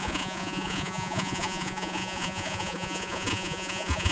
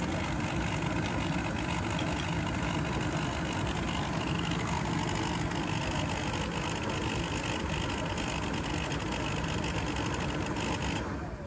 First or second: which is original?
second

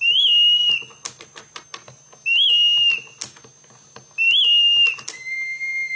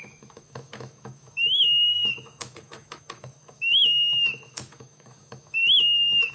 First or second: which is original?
first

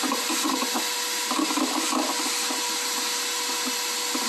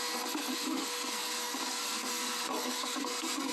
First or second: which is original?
first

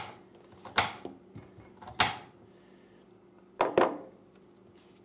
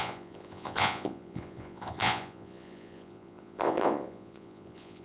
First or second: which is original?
first